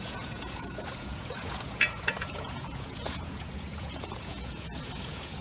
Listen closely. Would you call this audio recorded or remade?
remade